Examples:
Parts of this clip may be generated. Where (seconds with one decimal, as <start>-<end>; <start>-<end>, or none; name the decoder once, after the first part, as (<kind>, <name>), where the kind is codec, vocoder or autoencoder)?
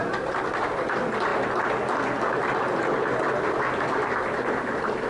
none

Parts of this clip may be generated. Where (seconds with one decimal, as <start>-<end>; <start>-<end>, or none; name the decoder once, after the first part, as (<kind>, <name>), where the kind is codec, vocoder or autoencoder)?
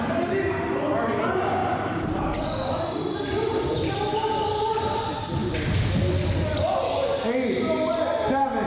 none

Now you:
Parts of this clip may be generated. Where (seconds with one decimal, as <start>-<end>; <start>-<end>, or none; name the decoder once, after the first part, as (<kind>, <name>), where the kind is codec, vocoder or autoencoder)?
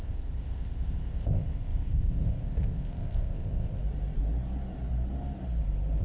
0.0-3.8 (codec, ZipCodec)